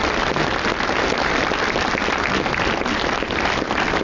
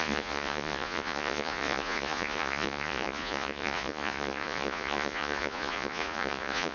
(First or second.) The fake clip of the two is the second